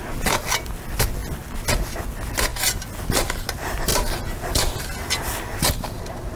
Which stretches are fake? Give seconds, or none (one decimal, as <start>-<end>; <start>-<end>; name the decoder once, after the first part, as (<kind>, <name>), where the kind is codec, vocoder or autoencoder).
none